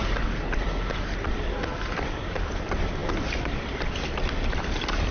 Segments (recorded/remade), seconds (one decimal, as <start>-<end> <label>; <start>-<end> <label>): 0.0-5.1 remade